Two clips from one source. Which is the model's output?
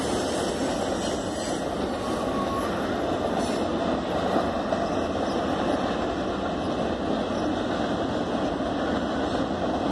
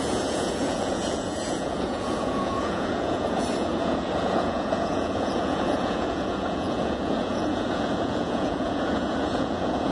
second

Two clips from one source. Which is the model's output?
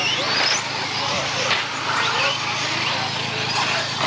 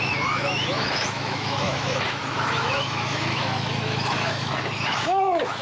second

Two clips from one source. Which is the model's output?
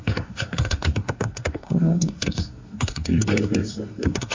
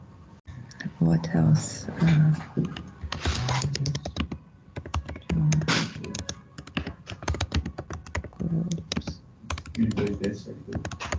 first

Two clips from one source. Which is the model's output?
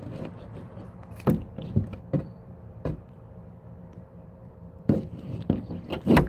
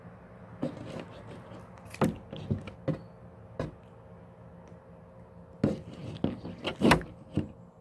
first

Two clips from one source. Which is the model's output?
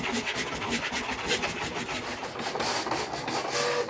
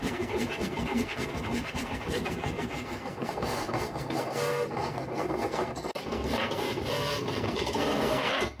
second